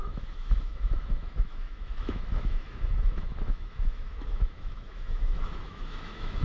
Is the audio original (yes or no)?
no